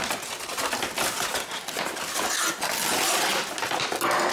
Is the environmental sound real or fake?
real